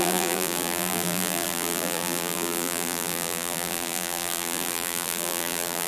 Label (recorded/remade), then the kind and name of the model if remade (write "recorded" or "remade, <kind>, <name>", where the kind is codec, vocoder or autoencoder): remade, vocoder, BigVGAN v2